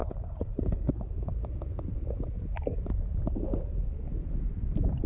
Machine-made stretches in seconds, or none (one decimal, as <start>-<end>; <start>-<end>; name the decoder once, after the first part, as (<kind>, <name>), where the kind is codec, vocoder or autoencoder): 0.0-0.9 (codec, HILCodec)